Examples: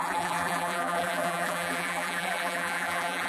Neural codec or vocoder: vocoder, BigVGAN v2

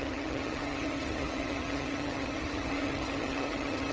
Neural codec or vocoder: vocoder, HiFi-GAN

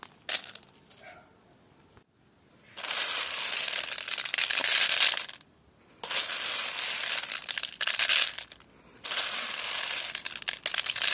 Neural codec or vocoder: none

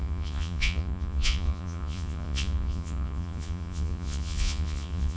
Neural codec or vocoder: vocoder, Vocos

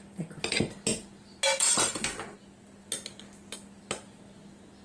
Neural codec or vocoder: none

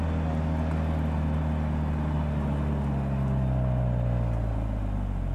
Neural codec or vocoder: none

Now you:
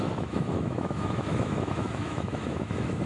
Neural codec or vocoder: autoencoder, DAC-VAE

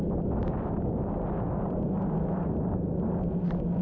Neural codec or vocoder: none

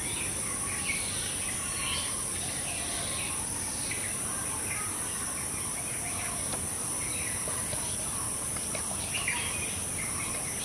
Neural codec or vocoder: none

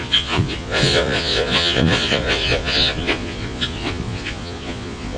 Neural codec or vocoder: vocoder, Vocos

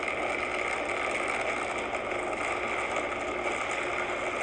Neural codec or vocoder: none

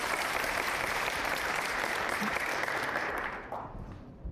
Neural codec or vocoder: vocoder, BigVGAN v2